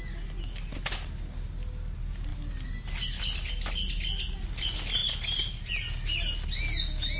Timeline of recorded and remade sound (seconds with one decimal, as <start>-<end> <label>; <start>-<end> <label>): 0.0-7.2 recorded

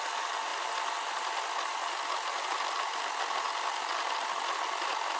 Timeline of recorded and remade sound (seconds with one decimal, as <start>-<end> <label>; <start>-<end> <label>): 0.0-5.2 recorded

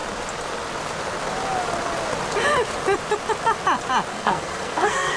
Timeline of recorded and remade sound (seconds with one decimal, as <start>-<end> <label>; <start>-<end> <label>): 0.0-4.1 recorded; 4.1-5.2 remade

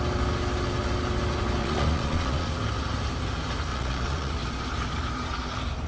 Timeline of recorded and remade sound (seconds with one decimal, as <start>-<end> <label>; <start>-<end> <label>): 0.0-1.6 recorded; 1.6-2.5 remade; 2.5-3.7 recorded; 3.7-4.3 remade; 4.3-5.9 recorded

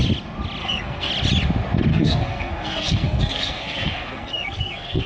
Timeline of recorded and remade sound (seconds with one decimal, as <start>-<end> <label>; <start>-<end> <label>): 0.0-0.6 recorded; 0.6-1.1 remade; 1.1-1.9 recorded; 1.9-5.1 remade

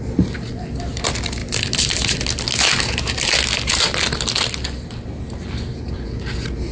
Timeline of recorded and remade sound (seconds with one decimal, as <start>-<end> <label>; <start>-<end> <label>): 0.0-6.7 recorded

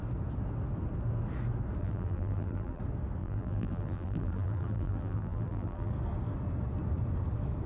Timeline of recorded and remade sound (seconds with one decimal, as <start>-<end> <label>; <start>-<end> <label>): 0.0-1.8 recorded; 1.8-2.8 remade; 2.8-3.2 recorded; 3.2-5.9 remade; 5.9-7.7 recorded

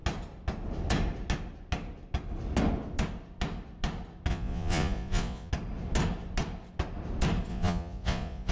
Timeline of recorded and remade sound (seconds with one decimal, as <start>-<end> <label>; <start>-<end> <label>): 0.0-4.3 recorded; 4.3-5.5 remade; 5.5-7.5 recorded; 7.5-8.5 remade